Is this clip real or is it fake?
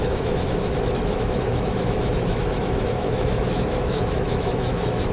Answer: fake